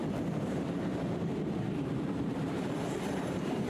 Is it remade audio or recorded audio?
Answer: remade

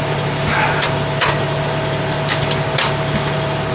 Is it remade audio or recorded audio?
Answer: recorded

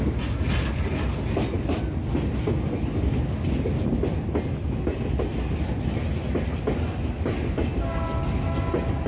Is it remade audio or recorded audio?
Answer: recorded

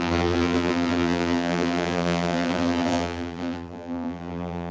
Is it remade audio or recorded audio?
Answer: remade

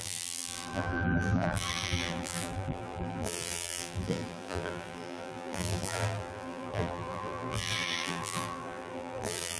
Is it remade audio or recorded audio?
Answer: remade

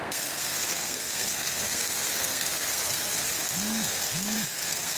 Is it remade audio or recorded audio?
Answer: remade